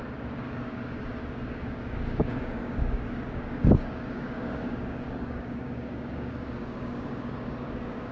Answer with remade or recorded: remade